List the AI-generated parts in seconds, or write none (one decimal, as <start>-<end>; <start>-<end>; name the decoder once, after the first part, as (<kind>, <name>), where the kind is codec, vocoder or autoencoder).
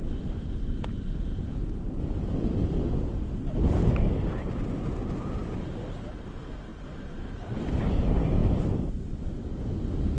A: 1.3-4.9 (vocoder, BigVGAN v2); 5.4-6.1; 6.7-7.4